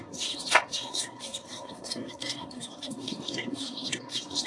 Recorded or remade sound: remade